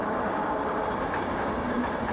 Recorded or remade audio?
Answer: remade